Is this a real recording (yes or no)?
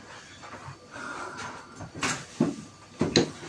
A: yes